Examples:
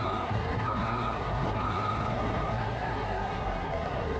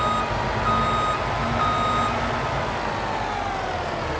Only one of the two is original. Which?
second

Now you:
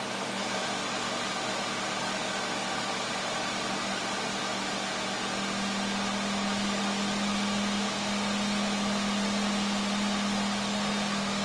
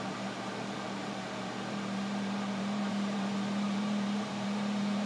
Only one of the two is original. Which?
first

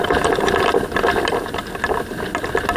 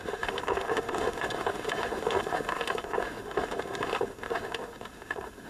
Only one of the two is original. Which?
first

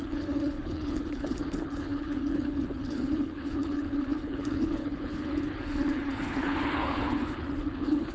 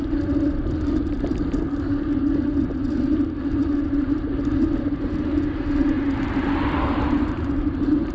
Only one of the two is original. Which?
second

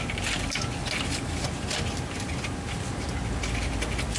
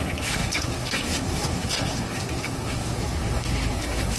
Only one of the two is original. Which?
first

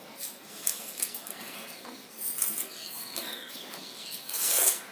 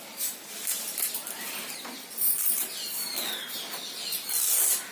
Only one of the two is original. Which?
second